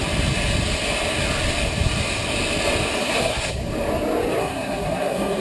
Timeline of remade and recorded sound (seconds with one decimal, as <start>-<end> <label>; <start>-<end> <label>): 0.0-3.0 recorded; 3.0-3.6 remade; 3.6-4.4 recorded; 4.4-5.4 remade